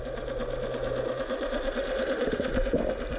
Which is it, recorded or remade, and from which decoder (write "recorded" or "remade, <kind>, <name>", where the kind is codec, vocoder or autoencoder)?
recorded